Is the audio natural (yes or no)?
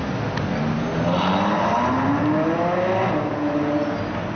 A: yes